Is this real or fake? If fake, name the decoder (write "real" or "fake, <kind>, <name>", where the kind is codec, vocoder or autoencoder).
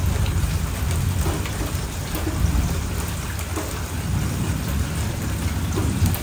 real